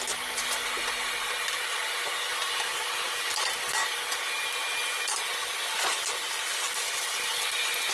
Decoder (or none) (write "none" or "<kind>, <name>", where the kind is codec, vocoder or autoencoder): none